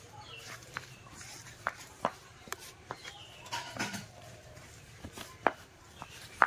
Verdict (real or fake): fake